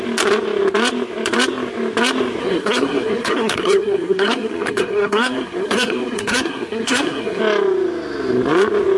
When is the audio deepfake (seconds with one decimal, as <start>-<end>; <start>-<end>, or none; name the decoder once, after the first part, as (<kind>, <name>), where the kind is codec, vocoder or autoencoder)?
2.4-7.4 (codec, SNAC)